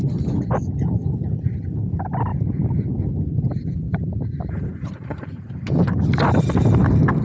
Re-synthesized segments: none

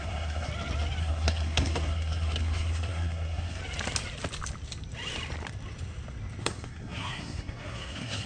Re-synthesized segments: 0.0-0.5 (codec, SNAC); 1.0-3.6; 6.4-8.3

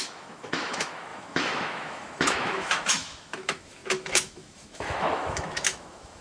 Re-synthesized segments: 0.0-6.2 (autoencoder, DAC-VAE)